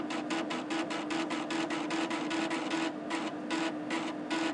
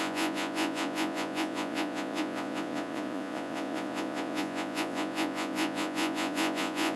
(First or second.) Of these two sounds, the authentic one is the first